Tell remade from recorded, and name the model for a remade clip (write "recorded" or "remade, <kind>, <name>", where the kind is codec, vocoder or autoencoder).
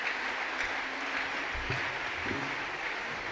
recorded